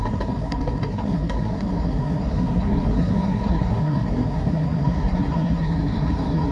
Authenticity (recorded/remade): remade